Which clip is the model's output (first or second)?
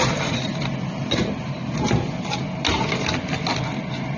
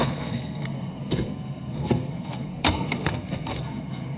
second